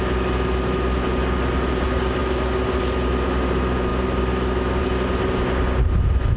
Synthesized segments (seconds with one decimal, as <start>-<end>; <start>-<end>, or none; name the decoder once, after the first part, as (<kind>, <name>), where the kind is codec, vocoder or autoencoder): none